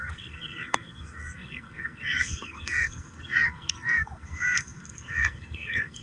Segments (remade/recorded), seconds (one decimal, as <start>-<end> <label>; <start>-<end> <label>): 0.0-6.0 remade